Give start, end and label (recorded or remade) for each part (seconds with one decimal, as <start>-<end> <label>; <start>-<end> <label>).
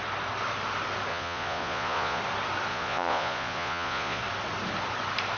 0.0-1.1 recorded; 1.1-2.2 remade; 2.2-2.7 recorded; 2.7-4.2 remade; 4.2-5.4 recorded